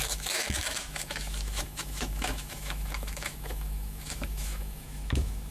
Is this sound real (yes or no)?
no